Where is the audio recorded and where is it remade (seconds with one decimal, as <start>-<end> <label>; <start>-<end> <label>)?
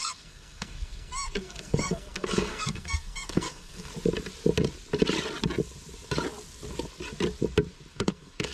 0.0-3.9 remade; 3.9-7.9 recorded; 7.9-8.5 remade